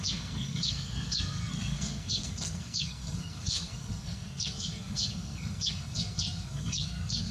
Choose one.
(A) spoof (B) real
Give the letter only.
A